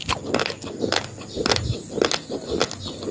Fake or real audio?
real